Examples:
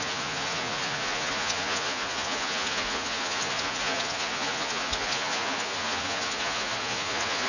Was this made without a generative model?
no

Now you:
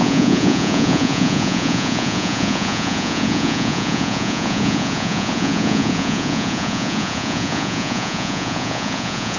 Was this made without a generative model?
no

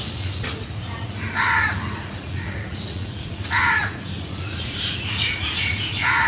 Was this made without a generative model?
no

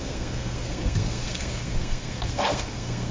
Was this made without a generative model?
no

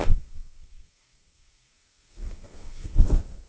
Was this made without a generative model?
no